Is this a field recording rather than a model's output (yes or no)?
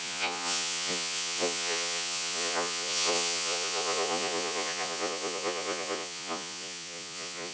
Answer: no